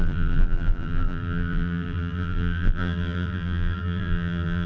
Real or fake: fake